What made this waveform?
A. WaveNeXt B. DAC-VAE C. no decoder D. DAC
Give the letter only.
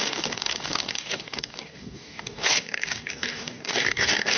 D